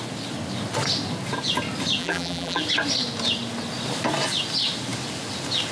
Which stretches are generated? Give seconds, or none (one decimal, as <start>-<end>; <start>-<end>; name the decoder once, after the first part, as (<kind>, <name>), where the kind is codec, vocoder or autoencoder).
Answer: 2.0-2.6 (vocoder, BigVGAN v2)